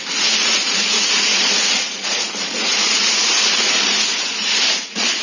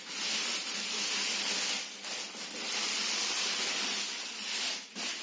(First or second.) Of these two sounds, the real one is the second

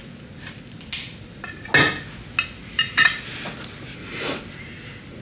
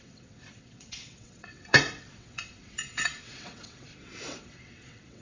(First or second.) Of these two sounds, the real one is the first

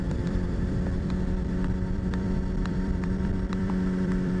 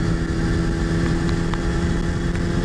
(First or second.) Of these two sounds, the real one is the second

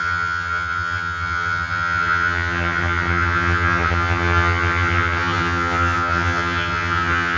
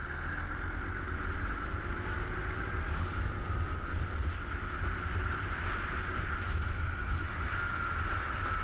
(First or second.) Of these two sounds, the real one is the second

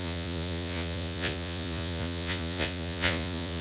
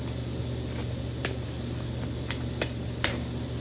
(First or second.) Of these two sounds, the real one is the second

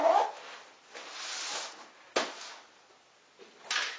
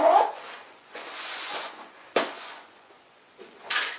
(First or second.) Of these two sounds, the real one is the first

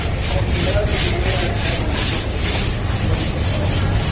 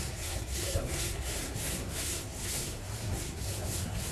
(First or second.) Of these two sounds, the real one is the first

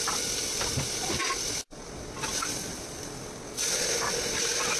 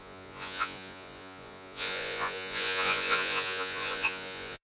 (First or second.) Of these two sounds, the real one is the first